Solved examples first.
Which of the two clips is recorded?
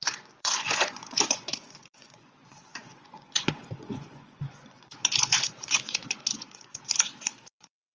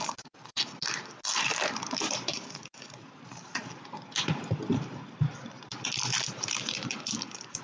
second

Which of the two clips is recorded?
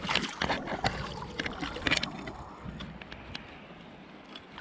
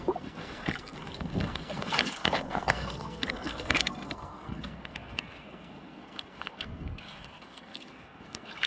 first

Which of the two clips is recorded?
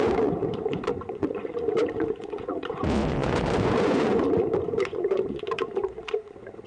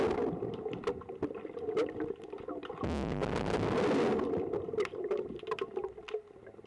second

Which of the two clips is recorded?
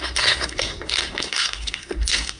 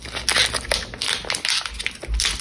second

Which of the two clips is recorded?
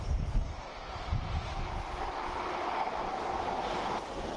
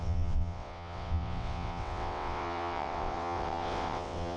first